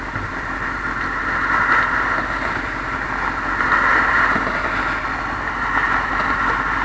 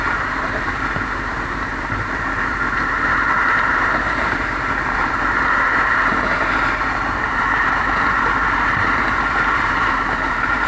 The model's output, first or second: second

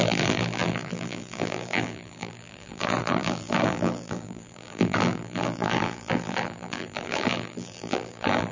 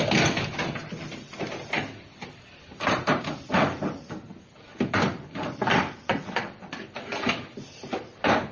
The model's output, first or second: first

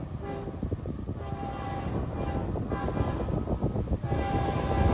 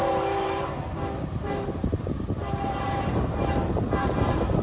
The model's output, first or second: second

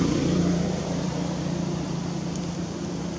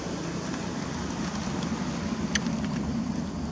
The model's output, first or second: first